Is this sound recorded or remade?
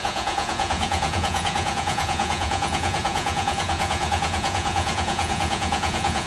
remade